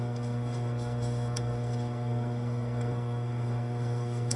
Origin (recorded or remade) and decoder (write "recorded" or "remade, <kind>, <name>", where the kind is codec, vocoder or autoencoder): remade, codec, SNAC